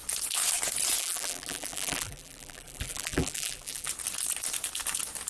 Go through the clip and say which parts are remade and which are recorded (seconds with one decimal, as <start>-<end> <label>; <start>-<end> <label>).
0.0-1.0 recorded; 1.0-3.9 remade; 3.9-5.3 recorded